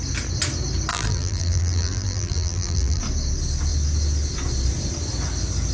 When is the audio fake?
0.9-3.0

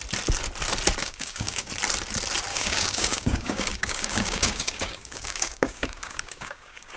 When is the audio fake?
1.0-1.7; 2.5-7.0

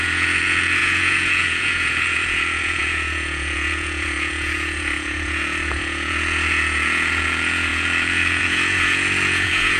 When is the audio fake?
0.0-9.8

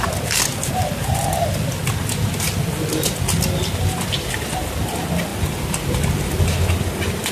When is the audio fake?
none

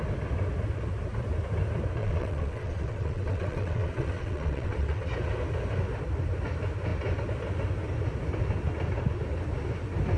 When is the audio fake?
2.0-5.1